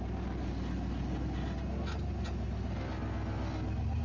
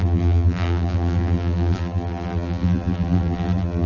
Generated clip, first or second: second